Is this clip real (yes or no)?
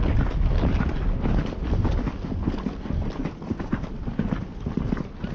yes